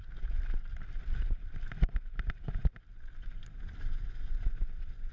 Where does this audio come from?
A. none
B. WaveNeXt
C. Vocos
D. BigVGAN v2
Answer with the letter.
A